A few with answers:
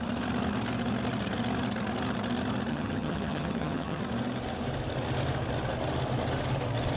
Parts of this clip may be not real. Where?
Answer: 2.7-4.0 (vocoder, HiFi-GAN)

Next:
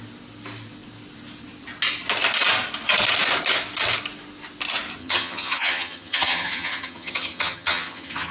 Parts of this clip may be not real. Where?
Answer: 5.0-8.3 (vocoder, HiFi-GAN)